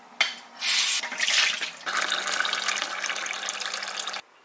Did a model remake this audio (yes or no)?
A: no